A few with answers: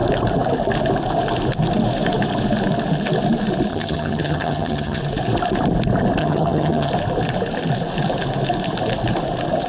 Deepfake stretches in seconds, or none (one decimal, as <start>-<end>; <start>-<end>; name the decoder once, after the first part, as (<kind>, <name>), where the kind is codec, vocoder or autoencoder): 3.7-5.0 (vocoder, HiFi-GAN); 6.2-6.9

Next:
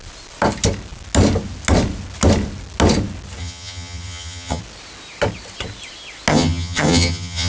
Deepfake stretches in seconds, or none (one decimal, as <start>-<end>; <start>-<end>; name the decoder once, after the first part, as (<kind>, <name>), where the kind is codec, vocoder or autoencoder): 3.4-4.6 (vocoder, HiFi-GAN); 6.3-7.5

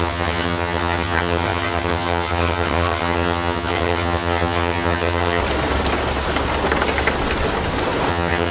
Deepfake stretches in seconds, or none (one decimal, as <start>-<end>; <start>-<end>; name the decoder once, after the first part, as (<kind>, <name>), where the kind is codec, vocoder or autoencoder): 0.0-5.4 (vocoder, HiFi-GAN); 8.1-8.5